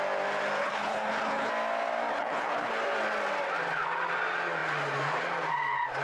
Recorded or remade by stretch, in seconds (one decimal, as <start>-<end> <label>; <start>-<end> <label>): 0.0-0.6 recorded; 0.6-1.5 remade; 1.5-2.1 recorded; 2.1-2.7 remade; 2.7-6.0 recorded